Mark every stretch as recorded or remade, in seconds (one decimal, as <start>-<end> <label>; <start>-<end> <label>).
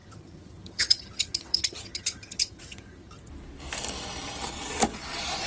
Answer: 0.0-3.3 remade; 3.3-5.5 recorded